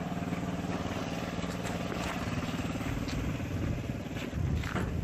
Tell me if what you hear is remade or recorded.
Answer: recorded